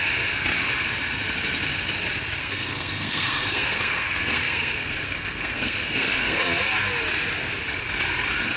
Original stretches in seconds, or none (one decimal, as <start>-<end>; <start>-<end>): 0.0-2.4; 6.4-8.6